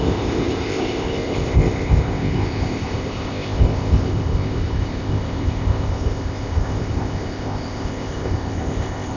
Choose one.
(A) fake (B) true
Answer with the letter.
A